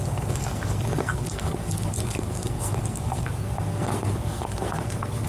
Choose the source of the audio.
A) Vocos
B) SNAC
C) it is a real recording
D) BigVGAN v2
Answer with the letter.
B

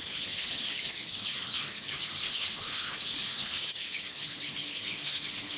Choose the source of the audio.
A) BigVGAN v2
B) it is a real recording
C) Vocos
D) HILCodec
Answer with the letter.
D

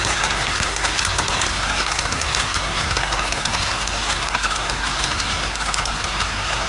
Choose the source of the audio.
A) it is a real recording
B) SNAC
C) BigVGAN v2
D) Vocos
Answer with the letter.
B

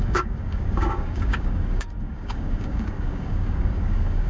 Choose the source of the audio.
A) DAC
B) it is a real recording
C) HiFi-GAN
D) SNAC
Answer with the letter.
A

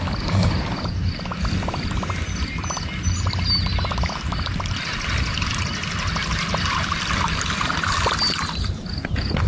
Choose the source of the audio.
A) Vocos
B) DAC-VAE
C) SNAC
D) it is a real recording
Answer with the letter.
D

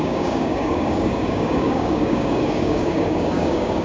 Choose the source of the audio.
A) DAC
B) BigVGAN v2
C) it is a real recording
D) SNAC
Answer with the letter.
A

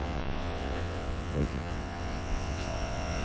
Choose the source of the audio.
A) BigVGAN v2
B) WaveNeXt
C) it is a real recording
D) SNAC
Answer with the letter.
B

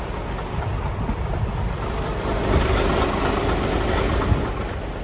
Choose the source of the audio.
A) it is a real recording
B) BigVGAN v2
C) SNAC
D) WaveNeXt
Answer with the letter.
A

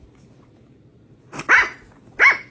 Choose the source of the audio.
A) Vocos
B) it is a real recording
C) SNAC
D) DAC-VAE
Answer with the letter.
B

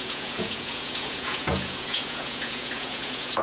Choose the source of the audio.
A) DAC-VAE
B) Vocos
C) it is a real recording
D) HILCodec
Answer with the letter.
B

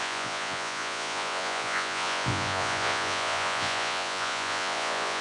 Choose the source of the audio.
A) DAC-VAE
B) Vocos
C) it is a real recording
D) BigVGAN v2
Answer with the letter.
B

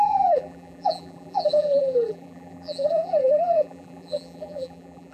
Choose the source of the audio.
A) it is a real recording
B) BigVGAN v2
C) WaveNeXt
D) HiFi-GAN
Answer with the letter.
B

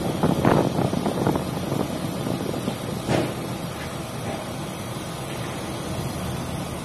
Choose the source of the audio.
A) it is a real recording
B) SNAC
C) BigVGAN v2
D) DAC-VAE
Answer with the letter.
A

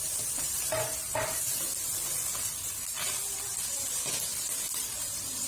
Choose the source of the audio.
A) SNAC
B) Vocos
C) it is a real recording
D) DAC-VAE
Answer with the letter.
C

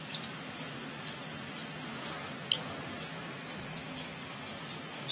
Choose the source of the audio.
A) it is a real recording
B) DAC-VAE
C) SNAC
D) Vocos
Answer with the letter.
A